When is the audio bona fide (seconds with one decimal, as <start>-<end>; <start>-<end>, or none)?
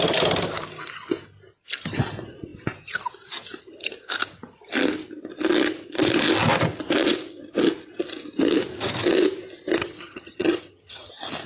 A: 0.0-9.8; 11.1-11.5